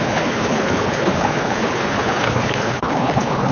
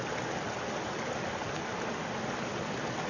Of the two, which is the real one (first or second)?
second